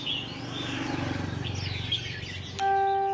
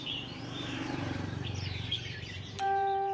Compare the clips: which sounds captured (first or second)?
first